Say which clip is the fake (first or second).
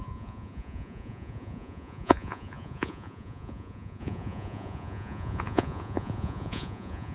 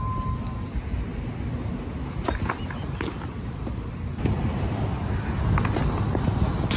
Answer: first